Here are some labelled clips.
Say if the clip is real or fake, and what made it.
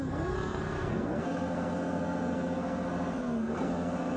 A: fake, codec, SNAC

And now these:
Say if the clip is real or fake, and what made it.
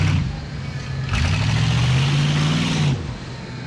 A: real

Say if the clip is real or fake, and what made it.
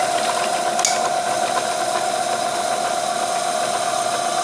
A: real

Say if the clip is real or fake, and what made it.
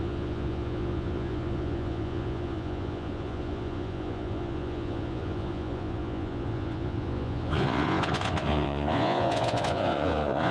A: fake, vocoder, Vocos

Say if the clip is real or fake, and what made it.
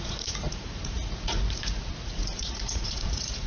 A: fake, vocoder, Vocos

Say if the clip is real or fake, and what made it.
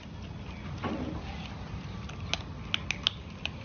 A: real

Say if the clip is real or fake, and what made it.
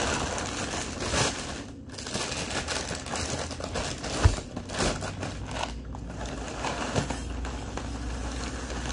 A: real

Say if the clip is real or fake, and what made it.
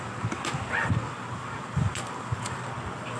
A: fake, vocoder, BigVGAN v2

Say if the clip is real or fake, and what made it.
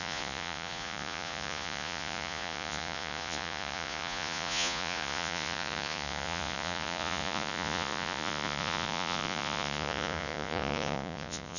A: fake, vocoder, Vocos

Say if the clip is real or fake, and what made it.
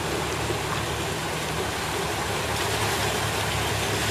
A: real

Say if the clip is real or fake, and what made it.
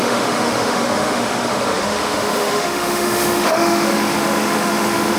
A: fake, autoencoder, DAC-VAE